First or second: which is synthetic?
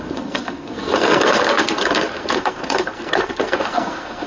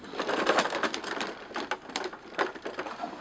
first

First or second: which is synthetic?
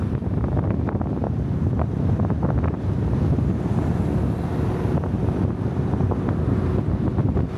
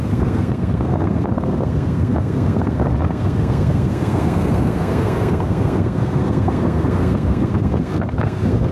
second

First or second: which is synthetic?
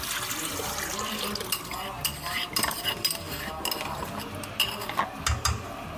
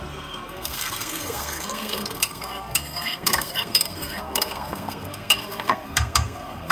second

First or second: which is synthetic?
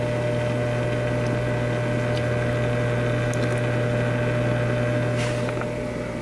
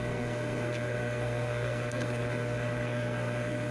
second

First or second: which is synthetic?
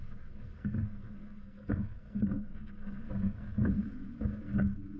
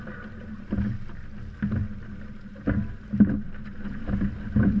first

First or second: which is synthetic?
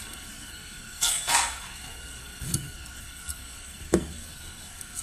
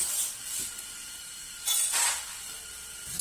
first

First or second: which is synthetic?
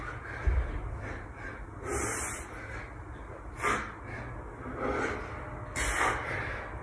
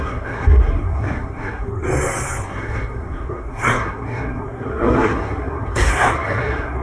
second